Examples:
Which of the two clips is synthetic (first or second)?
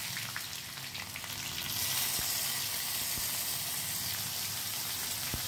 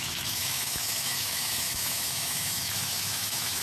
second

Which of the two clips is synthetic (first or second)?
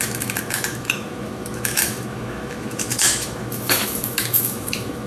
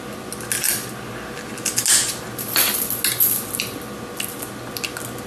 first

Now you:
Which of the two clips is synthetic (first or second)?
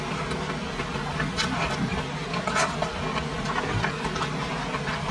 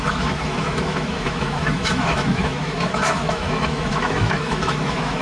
second